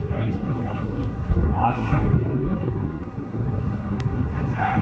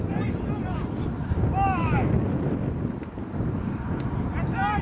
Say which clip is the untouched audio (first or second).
second